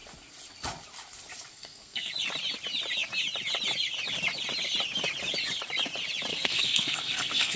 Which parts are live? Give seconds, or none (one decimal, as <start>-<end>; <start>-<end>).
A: 0.0-1.5; 2.1-6.3